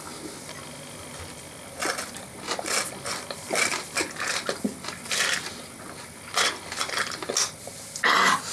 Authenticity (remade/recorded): recorded